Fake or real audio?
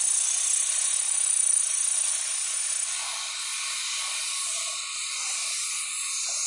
real